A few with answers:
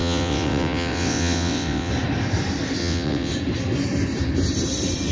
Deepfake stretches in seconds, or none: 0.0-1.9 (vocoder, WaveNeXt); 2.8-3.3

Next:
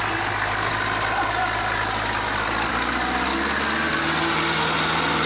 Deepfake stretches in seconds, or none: none